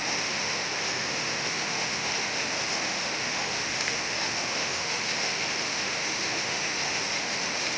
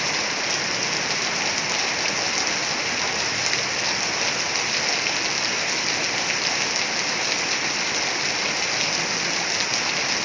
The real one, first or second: second